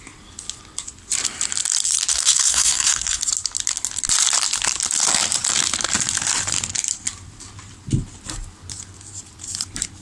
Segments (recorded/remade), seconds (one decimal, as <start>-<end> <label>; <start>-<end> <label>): 0.0-2.1 recorded; 2.1-3.2 remade; 3.2-10.0 recorded